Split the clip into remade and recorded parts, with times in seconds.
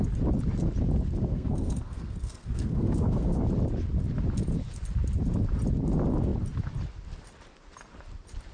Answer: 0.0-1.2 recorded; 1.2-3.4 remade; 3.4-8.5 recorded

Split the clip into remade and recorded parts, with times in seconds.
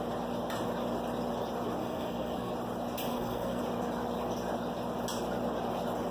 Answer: 0.0-1.8 recorded; 1.8-2.5 remade; 2.5-3.1 recorded; 3.1-3.6 remade; 3.6-6.1 recorded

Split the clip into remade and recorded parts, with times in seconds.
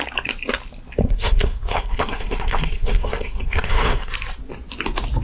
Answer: 0.0-1.0 recorded; 1.0-4.1 remade; 4.1-5.2 recorded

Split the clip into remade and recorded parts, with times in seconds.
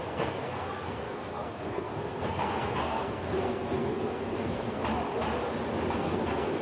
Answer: 0.0-4.8 remade; 4.8-5.9 recorded; 5.9-6.6 remade